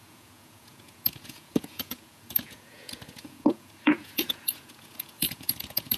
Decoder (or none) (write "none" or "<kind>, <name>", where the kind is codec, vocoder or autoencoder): vocoder, Vocos